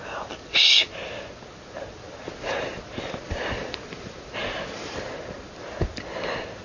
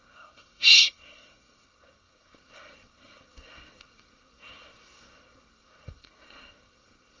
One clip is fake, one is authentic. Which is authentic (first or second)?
first